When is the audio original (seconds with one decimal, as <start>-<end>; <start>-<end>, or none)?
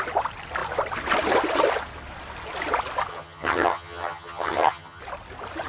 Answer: 0.0-3.1; 5.0-5.7